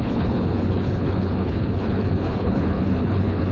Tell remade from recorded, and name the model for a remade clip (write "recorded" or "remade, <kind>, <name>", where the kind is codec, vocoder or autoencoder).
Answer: remade, codec, HILCodec